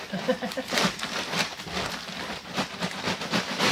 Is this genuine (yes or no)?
yes